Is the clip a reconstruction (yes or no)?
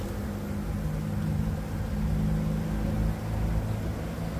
no